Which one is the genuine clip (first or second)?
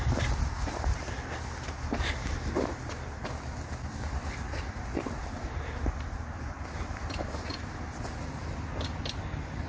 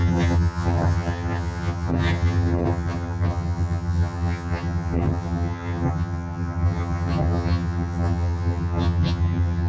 first